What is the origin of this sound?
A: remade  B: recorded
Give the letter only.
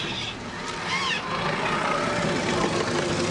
B